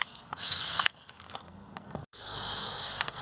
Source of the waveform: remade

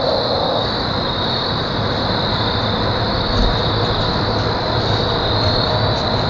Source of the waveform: recorded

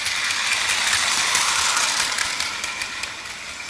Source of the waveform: recorded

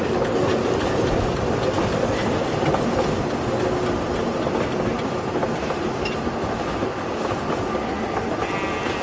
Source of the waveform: recorded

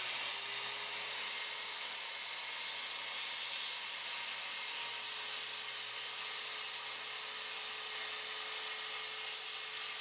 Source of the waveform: recorded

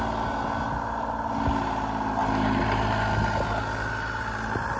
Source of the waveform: recorded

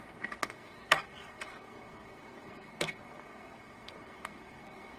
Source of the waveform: remade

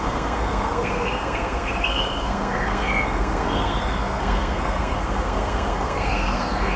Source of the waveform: remade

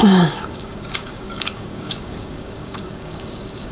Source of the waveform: remade